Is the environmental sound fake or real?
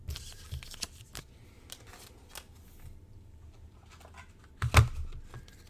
real